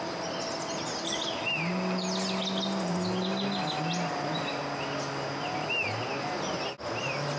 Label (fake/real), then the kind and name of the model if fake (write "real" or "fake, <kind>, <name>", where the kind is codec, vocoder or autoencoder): real